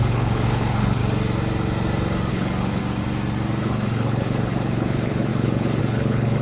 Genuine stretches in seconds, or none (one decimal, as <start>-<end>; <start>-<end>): 1.0-2.3; 2.8-3.6

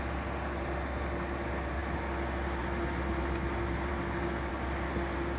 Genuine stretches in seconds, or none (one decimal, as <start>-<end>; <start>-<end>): 0.0-5.4

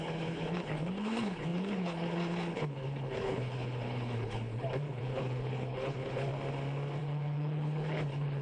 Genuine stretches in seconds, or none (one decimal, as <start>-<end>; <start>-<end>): 6.3-7.0

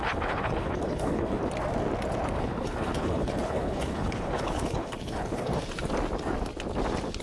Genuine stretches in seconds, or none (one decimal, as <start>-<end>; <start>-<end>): 1.4-2.4; 5.5-7.2

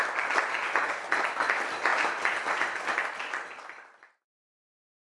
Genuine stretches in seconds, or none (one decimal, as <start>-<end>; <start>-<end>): 0.0-5.1

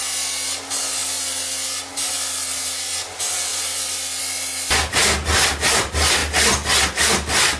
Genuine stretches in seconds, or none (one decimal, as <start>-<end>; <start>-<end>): 0.0-7.6